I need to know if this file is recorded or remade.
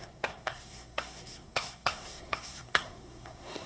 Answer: remade